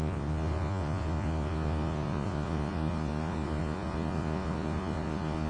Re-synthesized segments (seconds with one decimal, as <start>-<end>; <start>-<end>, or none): 0.0-5.5